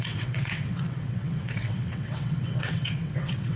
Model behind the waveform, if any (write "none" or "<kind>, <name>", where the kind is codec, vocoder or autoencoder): vocoder, WaveNeXt